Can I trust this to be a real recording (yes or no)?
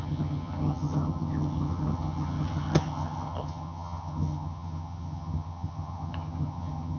no